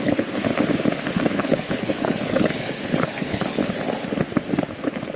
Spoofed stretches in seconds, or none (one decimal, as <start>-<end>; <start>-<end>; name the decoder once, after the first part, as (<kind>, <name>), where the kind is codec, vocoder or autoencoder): 0.0-0.5 (codec, HILCodec); 1.1-3.6